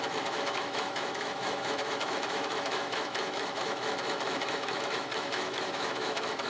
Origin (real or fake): fake